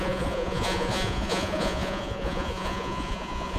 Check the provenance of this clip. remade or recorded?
remade